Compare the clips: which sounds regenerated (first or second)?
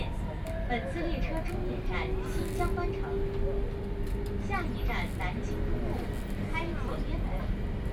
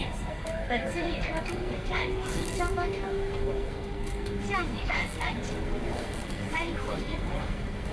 second